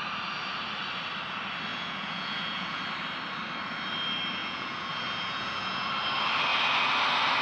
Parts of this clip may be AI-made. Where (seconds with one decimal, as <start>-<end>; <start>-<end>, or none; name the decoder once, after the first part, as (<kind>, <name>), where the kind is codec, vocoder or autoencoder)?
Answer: 1.7-2.8 (vocoder, Vocos); 4.4-5.9